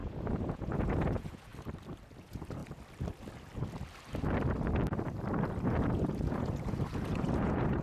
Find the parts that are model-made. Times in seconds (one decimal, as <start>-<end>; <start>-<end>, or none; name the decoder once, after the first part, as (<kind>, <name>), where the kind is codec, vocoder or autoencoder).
0.0-1.5 (vocoder, Vocos); 2.2-2.6; 5.8-7.8